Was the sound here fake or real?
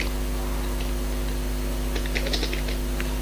real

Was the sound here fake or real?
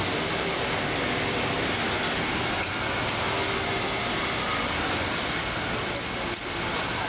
real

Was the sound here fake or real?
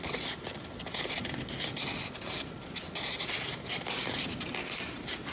real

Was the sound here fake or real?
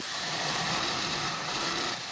fake